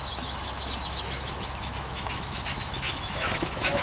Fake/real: fake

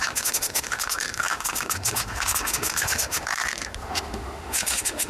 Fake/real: fake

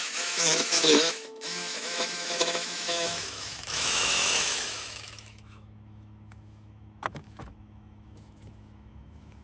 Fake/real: fake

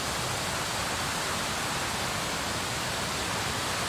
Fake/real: real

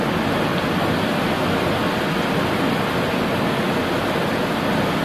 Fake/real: real